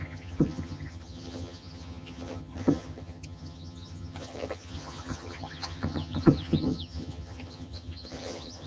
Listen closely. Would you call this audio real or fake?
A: fake